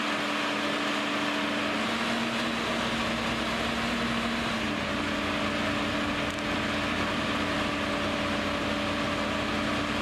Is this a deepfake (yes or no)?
no